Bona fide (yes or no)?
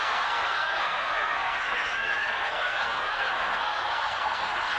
no